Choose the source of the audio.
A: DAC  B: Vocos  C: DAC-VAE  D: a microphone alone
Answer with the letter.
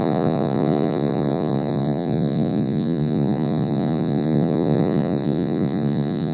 B